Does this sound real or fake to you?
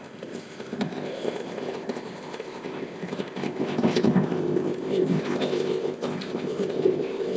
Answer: fake